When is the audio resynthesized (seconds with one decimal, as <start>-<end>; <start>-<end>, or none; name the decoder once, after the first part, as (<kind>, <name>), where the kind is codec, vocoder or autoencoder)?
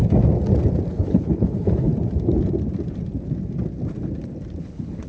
0.9-1.9 (codec, HILCodec); 4.6-5.1